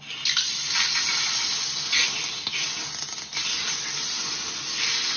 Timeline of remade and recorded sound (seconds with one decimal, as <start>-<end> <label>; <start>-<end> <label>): 0.0-5.2 recorded